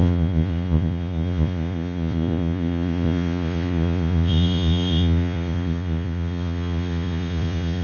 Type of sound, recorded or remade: remade